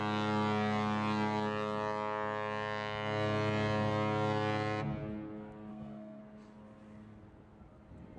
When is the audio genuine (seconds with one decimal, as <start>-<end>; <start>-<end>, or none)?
0.0-5.7; 6.2-8.2